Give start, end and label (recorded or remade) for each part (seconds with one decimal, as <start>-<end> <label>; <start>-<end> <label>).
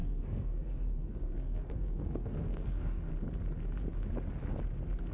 0.0-3.1 remade; 3.1-5.1 recorded